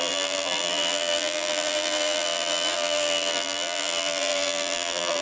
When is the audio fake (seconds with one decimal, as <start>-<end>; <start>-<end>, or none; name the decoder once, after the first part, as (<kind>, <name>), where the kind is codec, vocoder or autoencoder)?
0.0-5.2 (vocoder, BigVGAN v2)